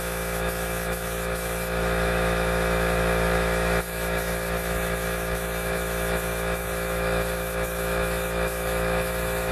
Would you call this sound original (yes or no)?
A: no